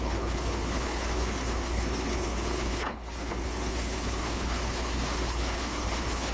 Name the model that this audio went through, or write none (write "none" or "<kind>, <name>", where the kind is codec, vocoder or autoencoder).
codec, HILCodec